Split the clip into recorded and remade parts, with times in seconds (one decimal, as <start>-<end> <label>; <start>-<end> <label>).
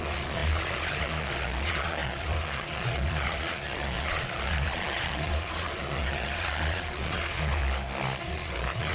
0.0-7.6 remade; 7.6-8.2 recorded; 8.2-8.9 remade